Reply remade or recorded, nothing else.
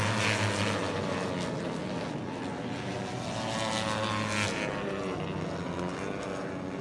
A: recorded